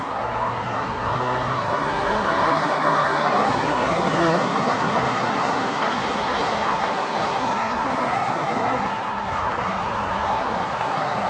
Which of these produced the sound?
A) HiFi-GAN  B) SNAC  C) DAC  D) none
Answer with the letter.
B